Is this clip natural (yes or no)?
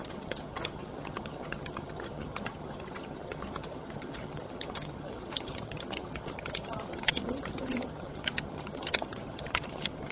no